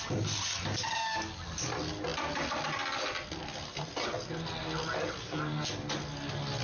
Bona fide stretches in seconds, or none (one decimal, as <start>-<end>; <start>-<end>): 0.0-6.6